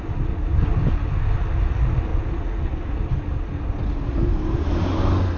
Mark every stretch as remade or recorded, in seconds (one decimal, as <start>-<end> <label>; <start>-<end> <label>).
0.0-5.4 recorded

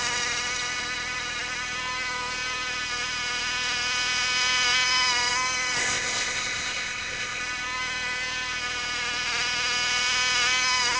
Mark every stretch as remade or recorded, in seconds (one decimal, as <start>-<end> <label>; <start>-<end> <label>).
0.0-5.8 recorded; 5.8-7.4 remade; 7.4-11.0 recorded

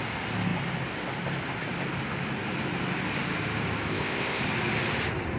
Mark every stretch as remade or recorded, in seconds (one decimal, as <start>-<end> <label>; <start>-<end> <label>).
0.0-3.9 recorded; 3.9-4.4 remade; 4.4-5.4 recorded

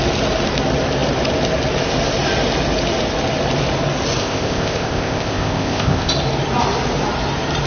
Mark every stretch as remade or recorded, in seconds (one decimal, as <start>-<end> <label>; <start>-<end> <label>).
0.0-4.2 recorded; 4.2-6.1 remade; 6.1-7.7 recorded

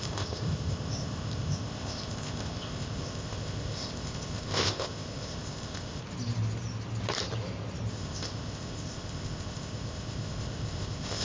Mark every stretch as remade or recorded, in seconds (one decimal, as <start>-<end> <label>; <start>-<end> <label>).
0.0-6.0 remade; 6.0-7.9 recorded; 7.9-11.2 remade

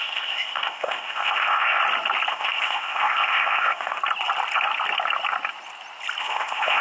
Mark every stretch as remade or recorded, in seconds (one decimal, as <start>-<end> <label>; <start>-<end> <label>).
0.0-1.8 remade; 1.8-2.3 recorded; 2.3-4.0 remade; 4.0-6.2 recorded; 6.2-6.8 remade

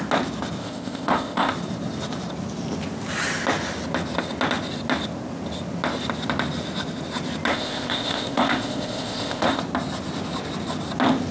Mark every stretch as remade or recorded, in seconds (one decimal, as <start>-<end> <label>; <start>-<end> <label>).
0.0-0.6 recorded; 0.6-1.5 remade; 1.5-7.5 recorded; 7.5-9.6 remade; 9.6-11.3 recorded